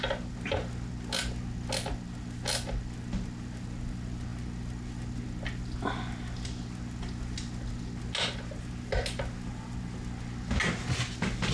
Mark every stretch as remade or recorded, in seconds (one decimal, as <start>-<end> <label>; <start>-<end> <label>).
0.0-11.5 recorded